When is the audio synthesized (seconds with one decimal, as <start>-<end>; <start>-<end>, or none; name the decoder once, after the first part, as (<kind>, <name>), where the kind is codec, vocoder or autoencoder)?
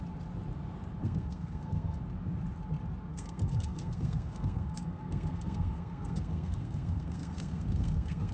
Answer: 1.0-2.0 (codec, SNAC); 3.1-8.3